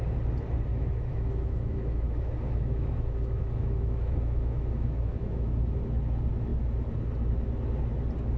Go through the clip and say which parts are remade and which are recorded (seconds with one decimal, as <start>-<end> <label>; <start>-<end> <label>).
0.0-0.7 recorded; 0.7-5.7 remade; 5.7-8.4 recorded